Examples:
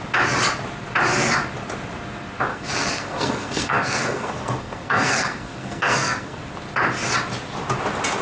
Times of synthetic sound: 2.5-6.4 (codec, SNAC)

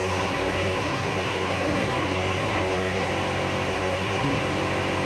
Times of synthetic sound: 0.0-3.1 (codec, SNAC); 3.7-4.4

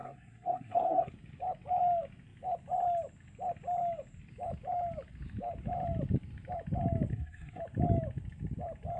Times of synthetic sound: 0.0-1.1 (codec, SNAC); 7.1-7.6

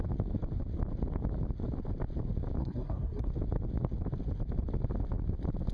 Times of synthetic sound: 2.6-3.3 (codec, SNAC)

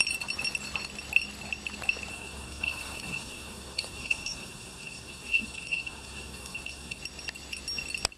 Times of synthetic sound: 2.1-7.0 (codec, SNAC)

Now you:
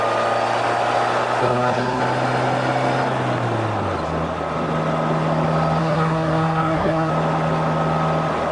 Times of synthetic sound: 1.4-2.0 (codec, SNAC); 5.8-7.1

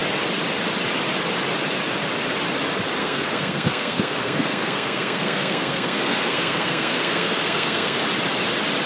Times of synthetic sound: 3.0-8.0 (codec, SNAC)

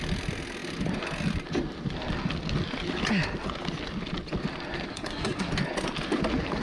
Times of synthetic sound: 4.9-5.5 (codec, SNAC)